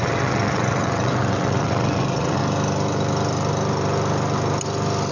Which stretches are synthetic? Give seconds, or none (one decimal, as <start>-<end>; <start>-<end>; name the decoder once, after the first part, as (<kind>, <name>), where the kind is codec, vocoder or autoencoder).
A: 0.0-2.4 (vocoder, WaveNeXt)